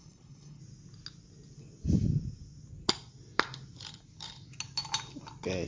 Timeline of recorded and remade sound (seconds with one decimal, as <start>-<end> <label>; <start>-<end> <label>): 0.0-0.6 remade; 0.6-5.7 recorded